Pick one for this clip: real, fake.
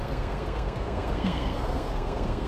fake